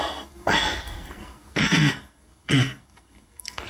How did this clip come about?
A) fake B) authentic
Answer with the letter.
A